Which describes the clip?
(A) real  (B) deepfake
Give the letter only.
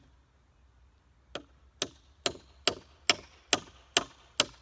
A